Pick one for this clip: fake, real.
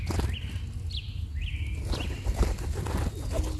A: real